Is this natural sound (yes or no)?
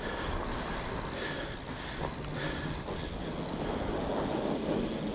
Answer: yes